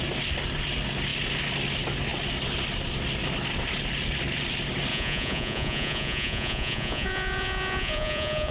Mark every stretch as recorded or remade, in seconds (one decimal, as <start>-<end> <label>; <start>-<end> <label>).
0.0-4.9 recorded; 4.9-8.5 remade